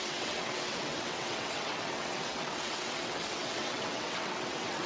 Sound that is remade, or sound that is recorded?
remade